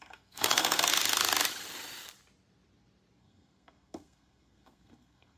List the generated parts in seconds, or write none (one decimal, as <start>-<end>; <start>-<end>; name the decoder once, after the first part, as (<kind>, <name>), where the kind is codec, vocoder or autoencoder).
0.0-0.9 (codec, SNAC); 3.2-5.4